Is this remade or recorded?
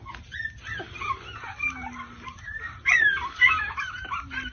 recorded